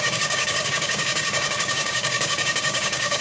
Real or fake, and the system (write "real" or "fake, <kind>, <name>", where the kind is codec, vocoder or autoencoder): fake, codec, DAC